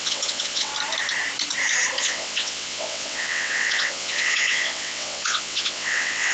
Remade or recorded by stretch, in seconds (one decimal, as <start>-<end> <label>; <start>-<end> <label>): 0.0-0.7 remade; 0.7-2.0 recorded; 2.0-6.3 remade